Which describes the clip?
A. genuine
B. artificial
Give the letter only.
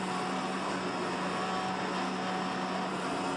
A